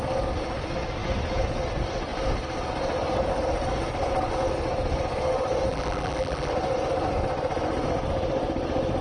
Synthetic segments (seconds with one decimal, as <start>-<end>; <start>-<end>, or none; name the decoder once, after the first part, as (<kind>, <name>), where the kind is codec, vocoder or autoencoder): 5.7-6.5 (vocoder, BigVGAN v2)

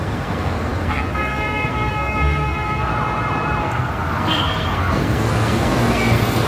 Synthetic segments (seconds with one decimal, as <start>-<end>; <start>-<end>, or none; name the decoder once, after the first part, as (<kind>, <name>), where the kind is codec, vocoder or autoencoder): 0.0-2.9 (codec, SNAC); 3.6-6.5

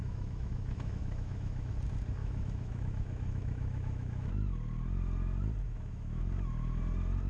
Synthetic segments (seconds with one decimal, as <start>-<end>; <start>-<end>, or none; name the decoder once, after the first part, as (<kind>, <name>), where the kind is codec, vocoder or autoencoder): 0.0-1.7 (autoencoder, DAC-VAE); 2.2-4.3; 5.6-6.2

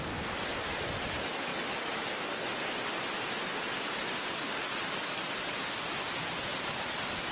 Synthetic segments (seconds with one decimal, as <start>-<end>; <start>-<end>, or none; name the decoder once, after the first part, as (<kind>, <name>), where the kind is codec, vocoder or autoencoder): none

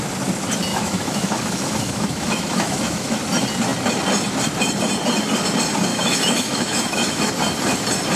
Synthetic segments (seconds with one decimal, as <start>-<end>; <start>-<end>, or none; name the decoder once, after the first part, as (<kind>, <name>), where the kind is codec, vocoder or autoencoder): 0.7-3.2 (autoencoder, DAC-VAE); 5.9-7.3

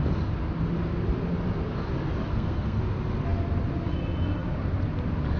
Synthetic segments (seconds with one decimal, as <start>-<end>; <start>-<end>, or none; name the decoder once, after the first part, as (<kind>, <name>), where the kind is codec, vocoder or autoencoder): 2.3-2.8 (codec, SNAC)

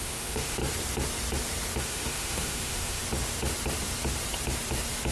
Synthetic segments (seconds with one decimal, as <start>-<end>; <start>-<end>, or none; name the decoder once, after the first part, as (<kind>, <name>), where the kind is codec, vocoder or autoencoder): 0.0-0.6 (autoencoder, DAC-VAE); 1.8-3.0